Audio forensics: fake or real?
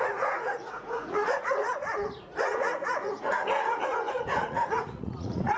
fake